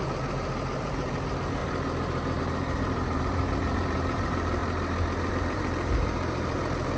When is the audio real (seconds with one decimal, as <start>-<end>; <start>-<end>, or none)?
1.6-2.4; 4.6-5.3